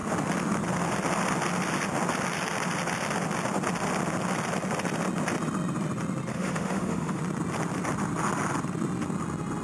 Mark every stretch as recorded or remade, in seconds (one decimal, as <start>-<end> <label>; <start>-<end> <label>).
0.0-6.3 recorded; 6.3-7.2 remade; 7.2-9.6 recorded